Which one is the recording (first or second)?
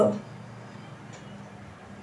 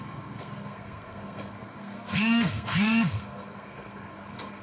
first